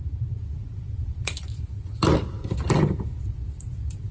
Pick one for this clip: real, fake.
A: fake